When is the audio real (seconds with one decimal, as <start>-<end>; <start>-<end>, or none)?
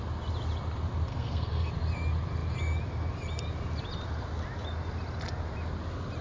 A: 0.0-1.1; 1.7-6.2